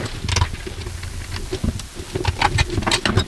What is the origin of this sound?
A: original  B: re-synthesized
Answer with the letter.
A